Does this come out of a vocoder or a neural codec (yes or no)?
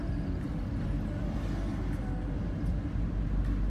no